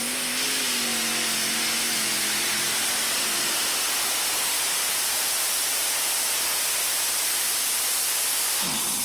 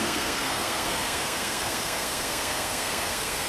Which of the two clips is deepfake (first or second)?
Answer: second